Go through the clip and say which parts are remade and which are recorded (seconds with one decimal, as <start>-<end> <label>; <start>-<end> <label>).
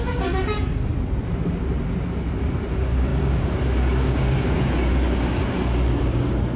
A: 0.0-0.9 remade; 0.9-2.7 recorded; 2.7-6.6 remade